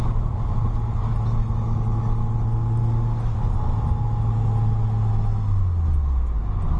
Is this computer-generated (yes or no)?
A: no